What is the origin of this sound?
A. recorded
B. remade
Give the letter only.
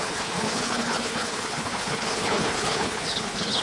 B